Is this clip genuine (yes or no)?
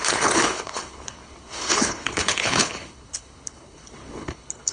no